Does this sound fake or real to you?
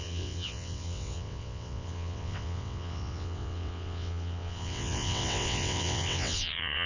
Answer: fake